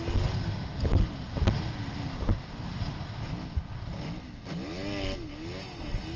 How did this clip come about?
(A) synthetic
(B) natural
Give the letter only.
B